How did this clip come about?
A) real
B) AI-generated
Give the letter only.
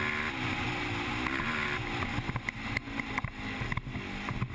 A